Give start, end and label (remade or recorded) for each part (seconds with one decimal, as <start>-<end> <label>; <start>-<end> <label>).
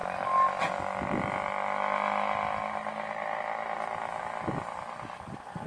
0.0-5.7 recorded